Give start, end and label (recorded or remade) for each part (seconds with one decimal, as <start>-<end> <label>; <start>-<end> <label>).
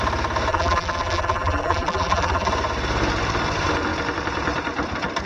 0.0-0.5 recorded; 0.5-2.5 remade; 2.5-5.3 recorded